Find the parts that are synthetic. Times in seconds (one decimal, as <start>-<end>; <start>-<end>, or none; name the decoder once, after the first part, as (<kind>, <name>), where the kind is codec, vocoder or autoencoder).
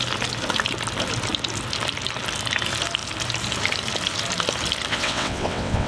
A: 4.9-5.9 (vocoder, WaveNeXt)